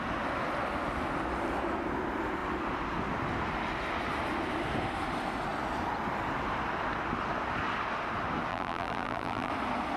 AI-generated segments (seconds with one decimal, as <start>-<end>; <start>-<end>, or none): 8.5-9.5